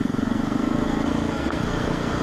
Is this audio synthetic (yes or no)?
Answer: yes